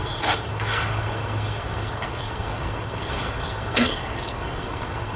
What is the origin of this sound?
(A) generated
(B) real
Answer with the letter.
A